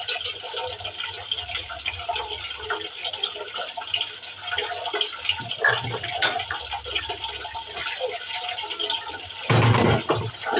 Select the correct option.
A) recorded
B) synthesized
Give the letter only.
A